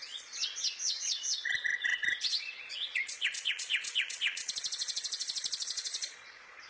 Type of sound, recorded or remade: remade